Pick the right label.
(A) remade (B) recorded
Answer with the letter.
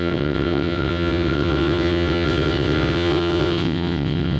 A